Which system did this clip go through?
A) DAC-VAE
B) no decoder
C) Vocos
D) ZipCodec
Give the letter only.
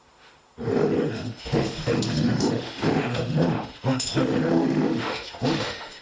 A